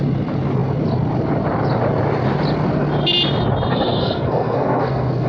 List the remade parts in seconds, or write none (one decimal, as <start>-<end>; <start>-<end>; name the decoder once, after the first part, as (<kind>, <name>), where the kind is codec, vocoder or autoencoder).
3.7-5.3 (codec, SNAC)

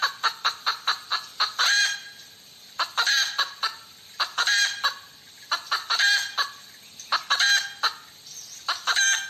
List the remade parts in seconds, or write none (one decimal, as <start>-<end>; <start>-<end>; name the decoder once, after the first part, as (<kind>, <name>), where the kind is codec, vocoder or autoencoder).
0.0-7.1 (vocoder, BigVGAN v2); 8.1-9.3

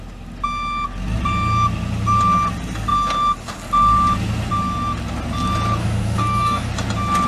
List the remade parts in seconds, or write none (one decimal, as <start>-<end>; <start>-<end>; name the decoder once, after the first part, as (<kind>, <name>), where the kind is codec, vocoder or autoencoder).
5.8-6.7 (codec, DAC)